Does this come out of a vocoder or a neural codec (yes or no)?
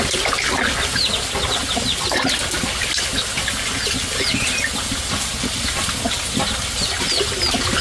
no